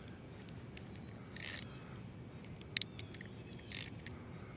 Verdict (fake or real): real